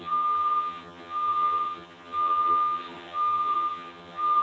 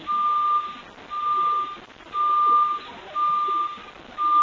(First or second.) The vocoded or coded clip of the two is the first